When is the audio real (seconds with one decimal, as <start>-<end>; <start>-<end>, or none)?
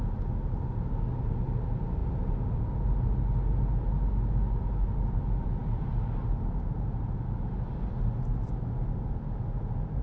0.0-10.0